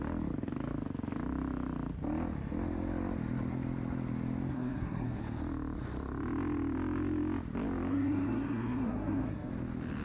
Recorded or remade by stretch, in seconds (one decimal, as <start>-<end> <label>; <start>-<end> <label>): 0.0-4.5 recorded; 4.5-5.2 remade; 5.2-7.9 recorded; 7.9-9.5 remade; 9.5-10.0 recorded